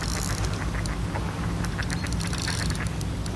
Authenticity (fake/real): real